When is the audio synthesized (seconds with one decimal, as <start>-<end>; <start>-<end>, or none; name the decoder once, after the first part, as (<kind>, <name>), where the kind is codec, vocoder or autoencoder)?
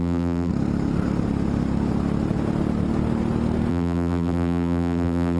0.0-0.5 (vocoder, BigVGAN v2); 3.7-5.4